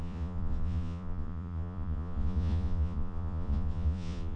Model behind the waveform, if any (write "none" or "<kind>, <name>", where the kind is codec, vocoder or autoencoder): vocoder, Vocos